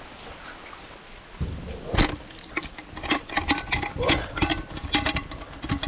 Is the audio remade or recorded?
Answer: recorded